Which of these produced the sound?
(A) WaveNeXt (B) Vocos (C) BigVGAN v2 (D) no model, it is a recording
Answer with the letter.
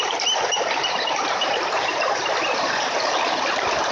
C